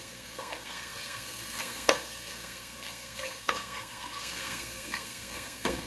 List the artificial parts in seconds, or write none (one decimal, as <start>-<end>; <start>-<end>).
0.0-5.9

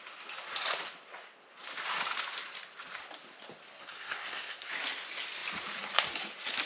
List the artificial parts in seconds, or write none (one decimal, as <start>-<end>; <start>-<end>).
3.7-4.7